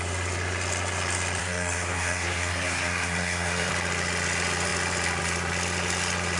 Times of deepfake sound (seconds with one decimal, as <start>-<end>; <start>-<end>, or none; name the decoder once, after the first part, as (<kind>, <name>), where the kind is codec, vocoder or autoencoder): 1.4-3.7 (codec, SNAC)